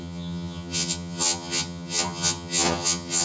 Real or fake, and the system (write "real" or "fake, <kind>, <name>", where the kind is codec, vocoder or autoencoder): fake, vocoder, HiFi-GAN